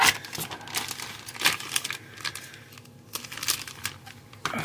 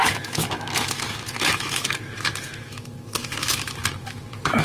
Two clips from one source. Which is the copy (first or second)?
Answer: second